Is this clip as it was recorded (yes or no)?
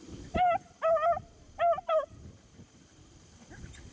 yes